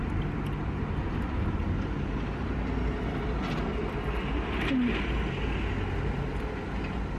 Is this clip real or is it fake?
real